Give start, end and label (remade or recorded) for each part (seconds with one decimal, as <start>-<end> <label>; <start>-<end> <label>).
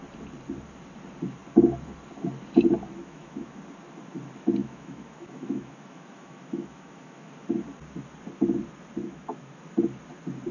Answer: 0.0-3.0 recorded; 3.0-3.6 remade; 3.6-4.6 recorded; 4.6-7.3 remade; 7.3-9.0 recorded; 9.0-9.6 remade; 9.6-10.5 recorded